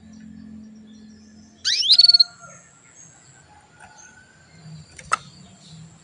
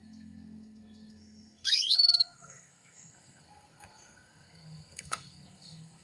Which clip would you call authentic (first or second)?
first